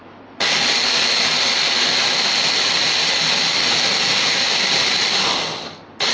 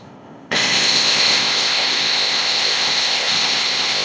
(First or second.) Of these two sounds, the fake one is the second